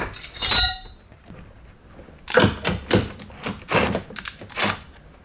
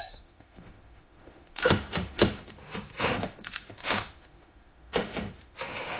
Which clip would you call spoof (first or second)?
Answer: second